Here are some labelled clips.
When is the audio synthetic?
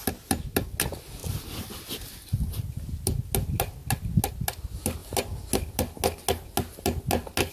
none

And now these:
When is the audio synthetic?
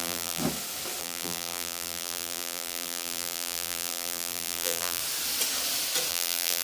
0.0-0.4 (vocoder, BigVGAN v2); 1.0-5.0; 6.1-6.6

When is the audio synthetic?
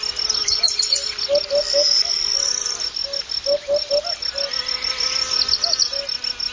0.4-1.0 (vocoder, Vocos)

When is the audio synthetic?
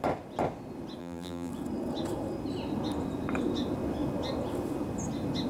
1.0-1.5 (vocoder, BigVGAN v2)